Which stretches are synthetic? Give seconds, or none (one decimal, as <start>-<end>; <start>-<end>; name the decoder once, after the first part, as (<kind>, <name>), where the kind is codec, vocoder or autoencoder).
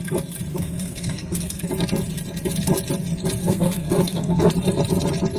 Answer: 0.5-1.7 (codec, SNAC); 3.4-4.5